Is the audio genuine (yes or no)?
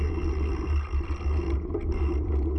yes